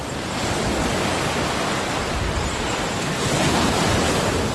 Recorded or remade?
recorded